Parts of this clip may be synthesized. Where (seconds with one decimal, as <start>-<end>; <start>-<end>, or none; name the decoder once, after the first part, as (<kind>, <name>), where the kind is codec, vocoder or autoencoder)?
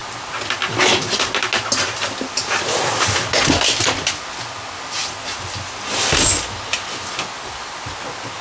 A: none